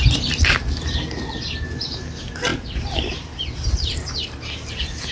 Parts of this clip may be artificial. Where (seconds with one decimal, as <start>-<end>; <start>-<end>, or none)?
2.5-4.4